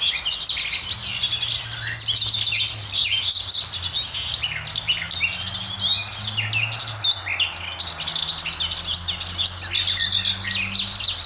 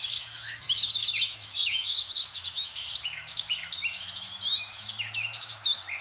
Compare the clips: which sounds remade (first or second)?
second